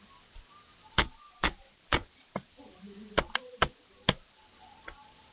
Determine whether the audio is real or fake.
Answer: real